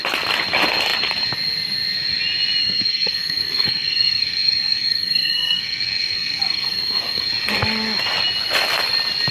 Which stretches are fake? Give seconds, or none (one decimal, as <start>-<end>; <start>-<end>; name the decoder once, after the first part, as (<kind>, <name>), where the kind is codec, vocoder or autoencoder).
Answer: 2.6-7.3 (codec, SNAC)